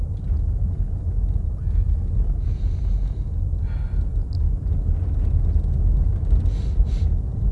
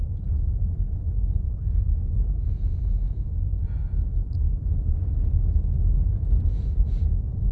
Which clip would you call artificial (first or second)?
second